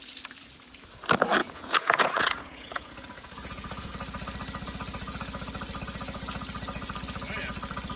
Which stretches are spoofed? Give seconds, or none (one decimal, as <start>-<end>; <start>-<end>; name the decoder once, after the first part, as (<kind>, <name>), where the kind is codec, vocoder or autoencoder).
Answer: 1.4-3.9 (vocoder, Vocos)